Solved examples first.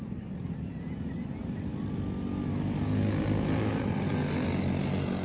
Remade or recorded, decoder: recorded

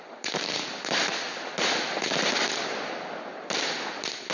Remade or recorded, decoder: recorded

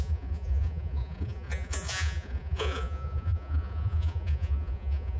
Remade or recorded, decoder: remade, vocoder, Vocos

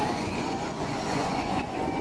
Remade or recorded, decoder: remade, vocoder, Vocos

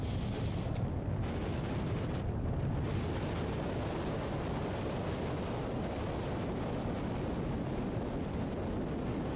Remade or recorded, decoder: recorded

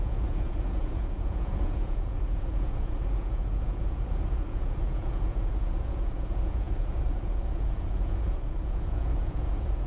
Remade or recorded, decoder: remade, vocoder, Vocos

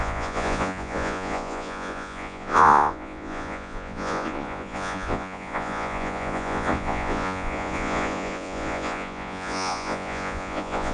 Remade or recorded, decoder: remade, vocoder, Vocos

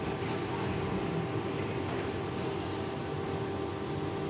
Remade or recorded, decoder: recorded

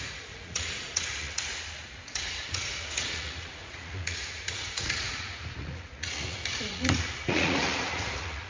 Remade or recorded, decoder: remade, vocoder, Vocos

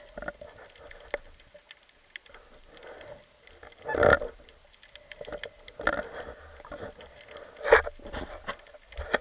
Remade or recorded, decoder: recorded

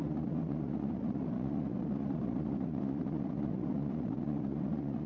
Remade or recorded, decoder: remade, vocoder, Vocos